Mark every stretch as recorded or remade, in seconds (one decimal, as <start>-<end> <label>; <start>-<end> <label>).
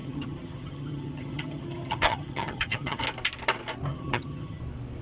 0.0-3.0 remade; 3.0-3.9 recorded; 3.9-4.6 remade; 4.6-5.0 recorded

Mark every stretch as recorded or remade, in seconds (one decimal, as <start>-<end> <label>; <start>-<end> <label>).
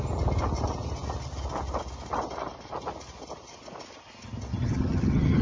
0.0-4.5 recorded; 4.5-5.4 remade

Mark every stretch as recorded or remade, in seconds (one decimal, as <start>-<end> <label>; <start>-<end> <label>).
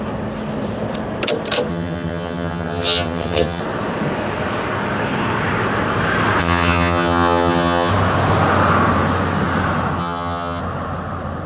0.0-1.7 recorded; 1.7-3.6 remade; 3.6-6.4 recorded; 6.4-7.9 remade; 7.9-10.0 recorded; 10.0-10.6 remade; 10.6-11.5 recorded